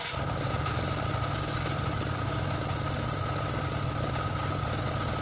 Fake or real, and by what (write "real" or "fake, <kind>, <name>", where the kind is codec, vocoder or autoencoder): real